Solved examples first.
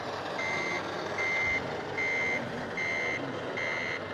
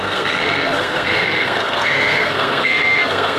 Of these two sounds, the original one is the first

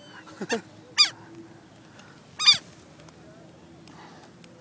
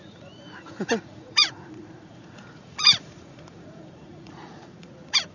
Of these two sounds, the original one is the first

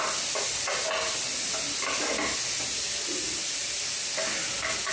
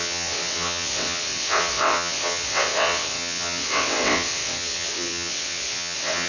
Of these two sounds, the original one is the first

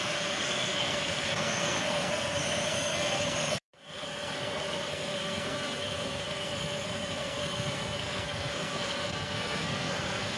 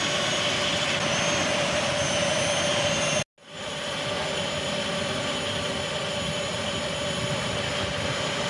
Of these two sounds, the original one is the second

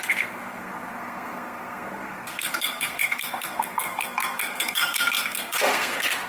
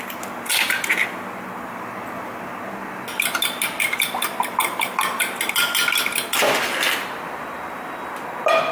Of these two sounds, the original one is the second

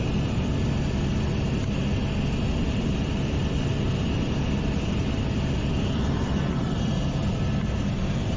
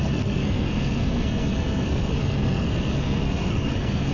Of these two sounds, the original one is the first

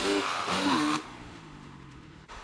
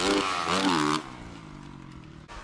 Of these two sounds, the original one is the second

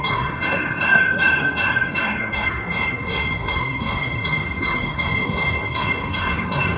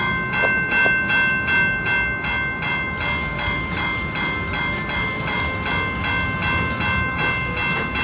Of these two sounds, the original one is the second